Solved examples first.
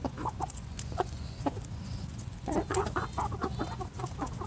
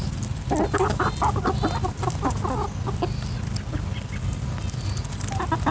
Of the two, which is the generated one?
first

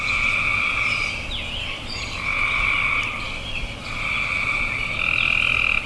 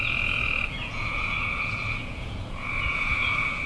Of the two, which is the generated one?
second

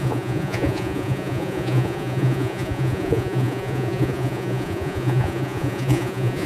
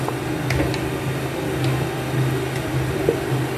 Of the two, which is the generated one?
first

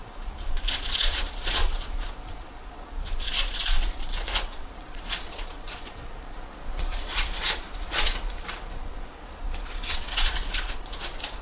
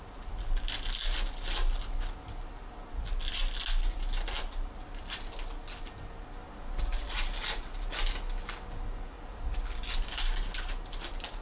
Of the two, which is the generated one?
first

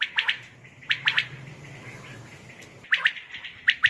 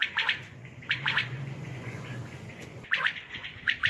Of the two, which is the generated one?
second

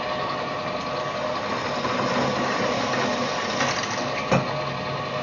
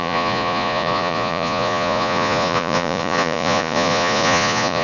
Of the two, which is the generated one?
second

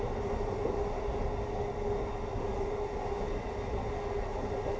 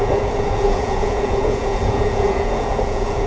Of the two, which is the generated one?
second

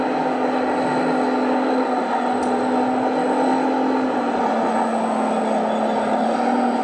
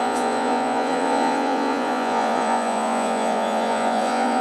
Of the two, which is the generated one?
second